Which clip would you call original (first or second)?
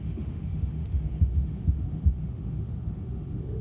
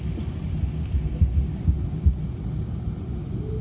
second